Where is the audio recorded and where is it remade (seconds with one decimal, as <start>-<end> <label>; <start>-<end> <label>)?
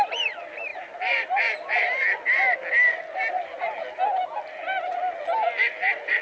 0.0-6.2 recorded